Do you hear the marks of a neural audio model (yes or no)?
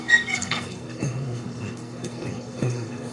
yes